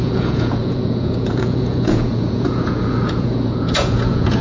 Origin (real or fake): fake